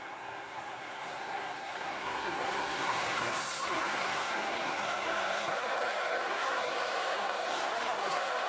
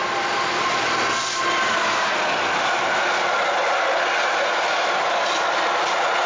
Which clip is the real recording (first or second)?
second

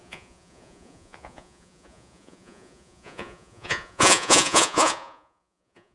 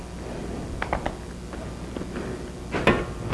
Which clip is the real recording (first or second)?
second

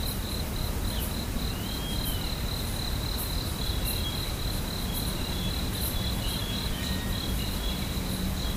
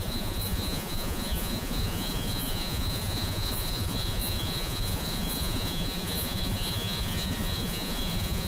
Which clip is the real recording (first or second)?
first